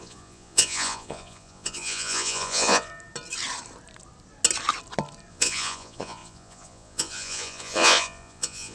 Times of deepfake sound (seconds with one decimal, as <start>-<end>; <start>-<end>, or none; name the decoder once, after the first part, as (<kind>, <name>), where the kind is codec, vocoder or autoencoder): 0.0-2.9 (vocoder, Vocos); 5.3-8.7